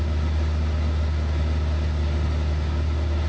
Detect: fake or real real